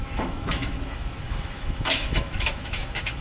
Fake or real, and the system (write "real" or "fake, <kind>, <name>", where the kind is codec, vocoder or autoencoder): fake, autoencoder, DAC-VAE